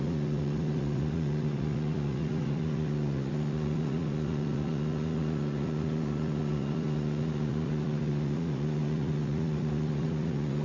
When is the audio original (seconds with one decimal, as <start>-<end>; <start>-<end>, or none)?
none